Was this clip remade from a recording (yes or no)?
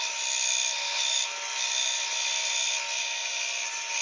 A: no